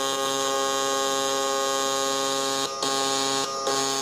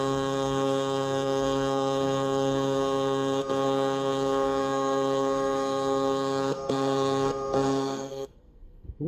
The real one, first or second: first